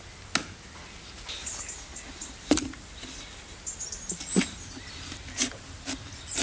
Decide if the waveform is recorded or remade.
recorded